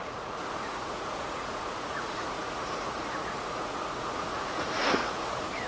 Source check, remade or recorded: remade